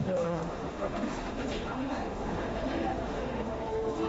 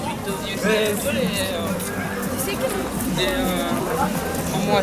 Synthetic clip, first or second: first